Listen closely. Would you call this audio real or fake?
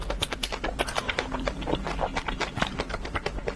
real